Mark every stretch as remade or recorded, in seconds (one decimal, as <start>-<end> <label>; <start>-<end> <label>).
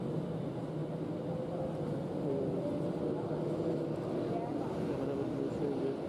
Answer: 0.0-0.8 remade; 0.8-4.5 recorded; 4.5-6.1 remade